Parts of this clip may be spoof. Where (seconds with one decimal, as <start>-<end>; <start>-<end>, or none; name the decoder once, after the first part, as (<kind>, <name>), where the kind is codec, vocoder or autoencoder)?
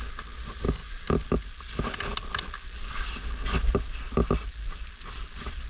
none